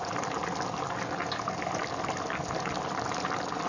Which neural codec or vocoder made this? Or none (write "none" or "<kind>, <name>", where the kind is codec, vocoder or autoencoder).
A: none